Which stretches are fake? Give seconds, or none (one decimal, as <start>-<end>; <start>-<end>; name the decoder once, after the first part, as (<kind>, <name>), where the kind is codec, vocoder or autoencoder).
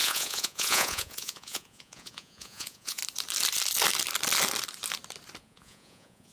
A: 0.0-3.0 (vocoder, Vocos); 5.4-6.3